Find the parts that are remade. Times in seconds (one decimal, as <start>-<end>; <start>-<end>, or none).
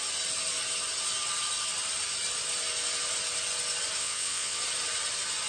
4.0-4.6